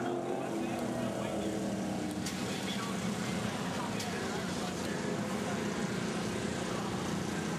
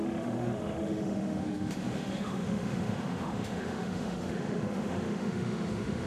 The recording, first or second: first